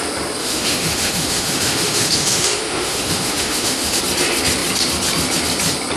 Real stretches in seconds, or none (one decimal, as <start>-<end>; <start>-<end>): 0.0-0.4; 4.0-6.0